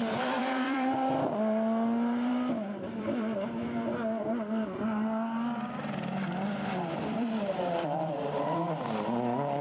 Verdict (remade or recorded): remade